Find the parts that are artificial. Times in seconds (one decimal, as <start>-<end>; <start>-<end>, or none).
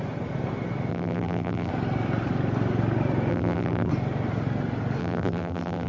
0.9-1.7; 3.3-3.9; 5.0-5.9